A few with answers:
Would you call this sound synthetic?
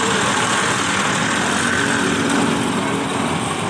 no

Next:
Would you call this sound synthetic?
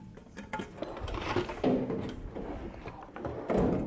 no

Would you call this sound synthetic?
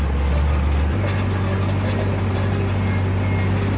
no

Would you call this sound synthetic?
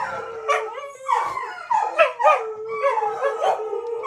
no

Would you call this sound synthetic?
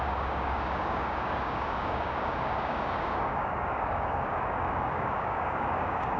yes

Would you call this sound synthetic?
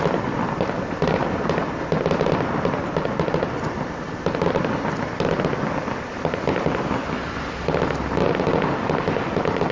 no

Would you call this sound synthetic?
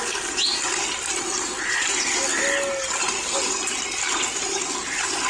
no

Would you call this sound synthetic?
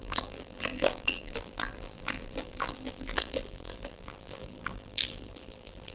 yes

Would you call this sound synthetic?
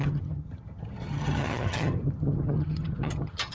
yes